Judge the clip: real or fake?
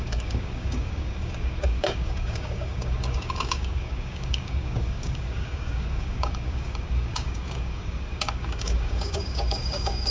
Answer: fake